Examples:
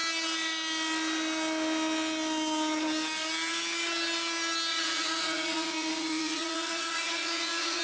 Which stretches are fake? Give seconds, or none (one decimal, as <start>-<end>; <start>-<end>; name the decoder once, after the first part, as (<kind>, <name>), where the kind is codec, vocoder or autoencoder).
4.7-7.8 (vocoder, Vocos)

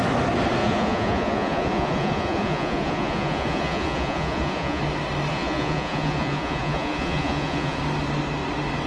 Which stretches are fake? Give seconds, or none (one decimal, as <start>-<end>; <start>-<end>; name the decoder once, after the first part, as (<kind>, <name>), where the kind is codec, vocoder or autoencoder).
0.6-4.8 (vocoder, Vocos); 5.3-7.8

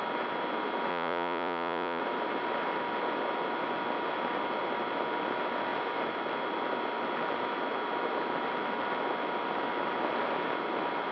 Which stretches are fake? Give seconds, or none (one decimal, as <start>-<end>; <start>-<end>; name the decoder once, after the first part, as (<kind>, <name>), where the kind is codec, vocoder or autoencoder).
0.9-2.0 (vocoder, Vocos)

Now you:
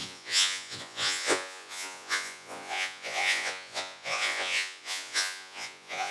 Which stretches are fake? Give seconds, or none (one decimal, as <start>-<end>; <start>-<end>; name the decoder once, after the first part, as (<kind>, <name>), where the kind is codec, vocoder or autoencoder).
0.0-6.1 (vocoder, Vocos)

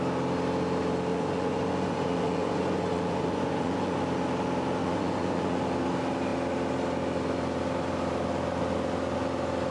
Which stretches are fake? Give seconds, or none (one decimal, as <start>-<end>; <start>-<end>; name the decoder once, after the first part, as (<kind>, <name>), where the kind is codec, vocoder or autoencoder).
1.1-4.0 (vocoder, Vocos); 4.8-5.6

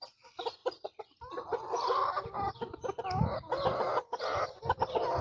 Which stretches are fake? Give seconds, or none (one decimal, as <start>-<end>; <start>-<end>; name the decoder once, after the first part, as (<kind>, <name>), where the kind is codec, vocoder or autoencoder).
none

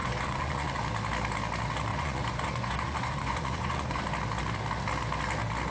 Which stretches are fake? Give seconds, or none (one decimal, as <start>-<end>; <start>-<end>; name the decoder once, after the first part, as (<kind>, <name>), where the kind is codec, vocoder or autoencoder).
0.0-0.8 (vocoder, Vocos); 1.9-4.0

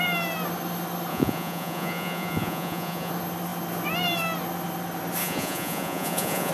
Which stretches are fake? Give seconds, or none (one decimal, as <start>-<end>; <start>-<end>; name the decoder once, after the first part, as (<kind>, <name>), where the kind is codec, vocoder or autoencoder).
1.1-3.1 (vocoder, Vocos); 5.2-6.5